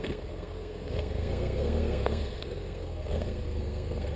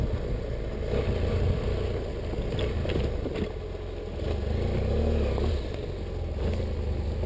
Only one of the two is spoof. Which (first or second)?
first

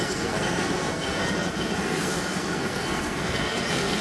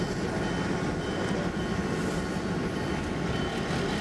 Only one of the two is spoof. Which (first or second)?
first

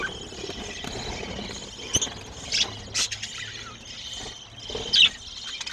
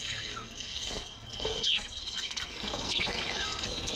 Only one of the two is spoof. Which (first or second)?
second